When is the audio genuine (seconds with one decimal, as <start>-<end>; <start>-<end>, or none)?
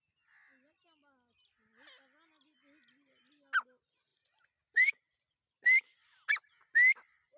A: 0.0-4.1; 5.0-7.4